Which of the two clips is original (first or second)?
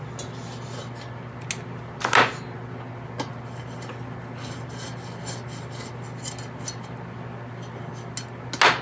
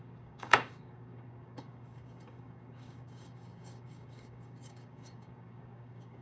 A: first